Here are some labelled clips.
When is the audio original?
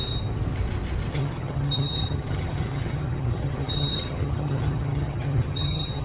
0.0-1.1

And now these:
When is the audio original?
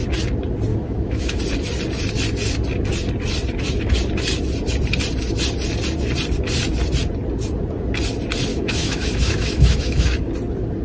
0.0-0.7; 1.4-8.5; 10.3-10.8